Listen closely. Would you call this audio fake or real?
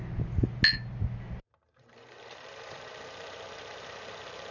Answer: real